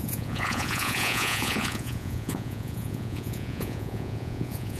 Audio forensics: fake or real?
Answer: fake